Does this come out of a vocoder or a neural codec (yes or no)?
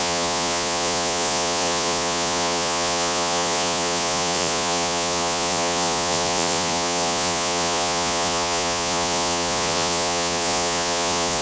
yes